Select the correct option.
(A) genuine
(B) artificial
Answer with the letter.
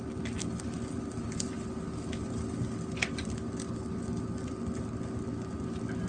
A